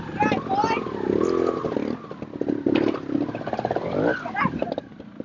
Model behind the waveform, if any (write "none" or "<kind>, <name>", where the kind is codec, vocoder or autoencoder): none